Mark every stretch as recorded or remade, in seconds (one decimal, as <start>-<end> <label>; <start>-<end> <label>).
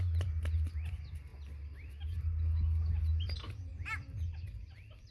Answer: 0.0-1.3 recorded; 1.3-1.9 remade; 1.9-3.1 recorded; 3.1-5.1 remade